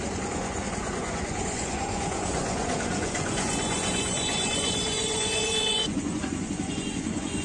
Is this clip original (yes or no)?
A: no